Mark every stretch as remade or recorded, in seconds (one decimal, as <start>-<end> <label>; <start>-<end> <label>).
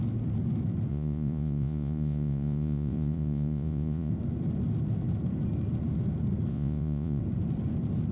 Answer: 0.0-0.9 recorded; 0.9-4.1 remade; 4.1-6.5 recorded; 6.5-7.2 remade; 7.2-8.1 recorded